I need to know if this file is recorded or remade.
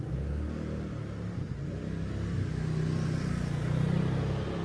recorded